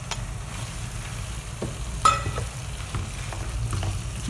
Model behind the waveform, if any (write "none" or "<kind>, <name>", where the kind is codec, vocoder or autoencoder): none